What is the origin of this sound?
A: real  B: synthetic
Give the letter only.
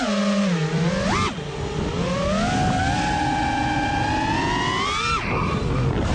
A